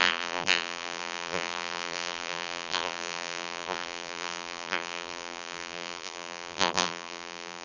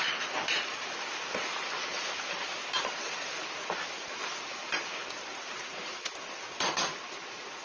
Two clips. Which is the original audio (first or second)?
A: second